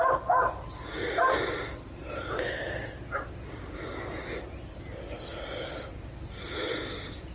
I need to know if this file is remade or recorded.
recorded